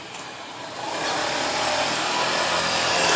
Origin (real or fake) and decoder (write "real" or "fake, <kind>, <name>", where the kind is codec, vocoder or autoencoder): real